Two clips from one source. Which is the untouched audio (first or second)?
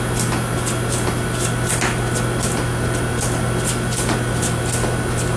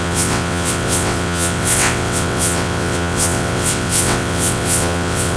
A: first